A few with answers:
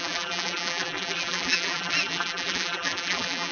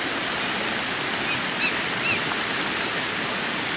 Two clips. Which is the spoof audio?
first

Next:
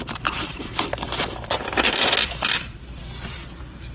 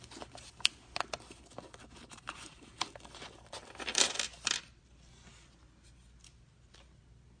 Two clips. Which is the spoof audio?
first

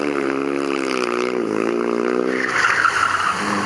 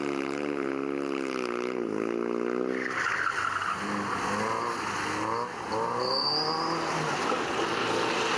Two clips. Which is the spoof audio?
first